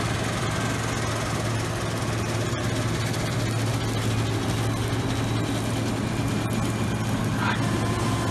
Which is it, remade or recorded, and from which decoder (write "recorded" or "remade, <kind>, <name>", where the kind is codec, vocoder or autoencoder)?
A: recorded